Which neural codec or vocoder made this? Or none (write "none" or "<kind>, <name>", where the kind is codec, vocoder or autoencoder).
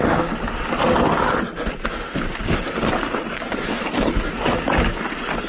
none